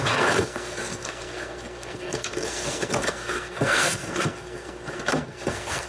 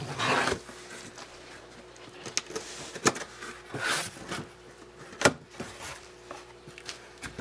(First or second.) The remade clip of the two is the first